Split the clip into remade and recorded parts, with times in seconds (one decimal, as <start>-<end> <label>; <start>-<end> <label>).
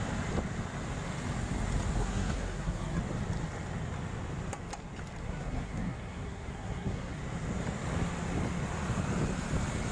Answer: 0.0-2.0 recorded; 2.0-3.0 remade; 3.0-5.2 recorded; 5.2-7.2 remade; 7.2-9.9 recorded